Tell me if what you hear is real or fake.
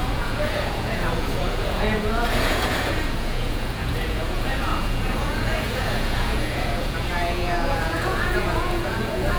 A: fake